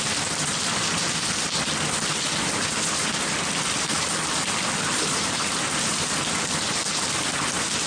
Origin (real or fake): real